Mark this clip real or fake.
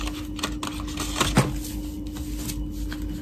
real